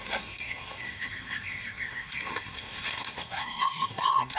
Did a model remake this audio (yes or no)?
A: yes